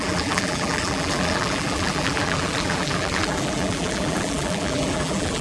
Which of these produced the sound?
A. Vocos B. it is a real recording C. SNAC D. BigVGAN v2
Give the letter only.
D